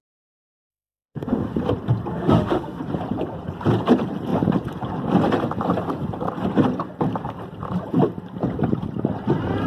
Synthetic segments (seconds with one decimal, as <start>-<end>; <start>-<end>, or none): 0.7-1.5; 2.1-2.8